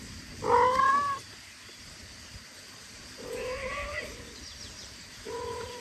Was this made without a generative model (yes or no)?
no